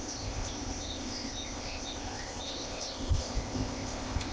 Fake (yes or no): yes